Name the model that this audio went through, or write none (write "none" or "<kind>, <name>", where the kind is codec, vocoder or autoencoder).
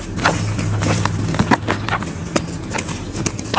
none